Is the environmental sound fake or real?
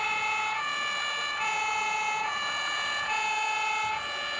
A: fake